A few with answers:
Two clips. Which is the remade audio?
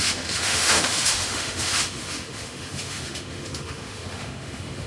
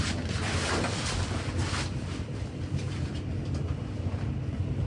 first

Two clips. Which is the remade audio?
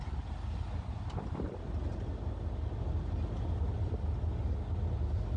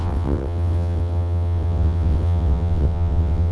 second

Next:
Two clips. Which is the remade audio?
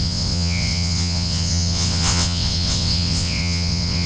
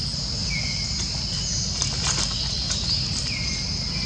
first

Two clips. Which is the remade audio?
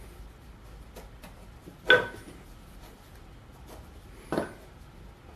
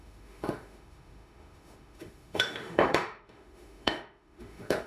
second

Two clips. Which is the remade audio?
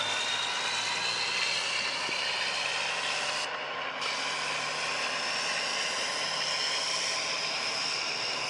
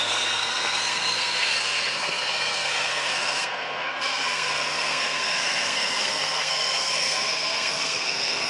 second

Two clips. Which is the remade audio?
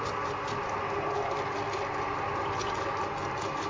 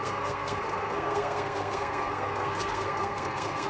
second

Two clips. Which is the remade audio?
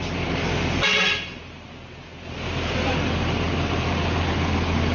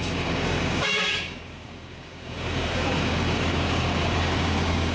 second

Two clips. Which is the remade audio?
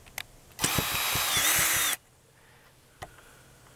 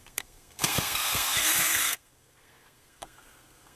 second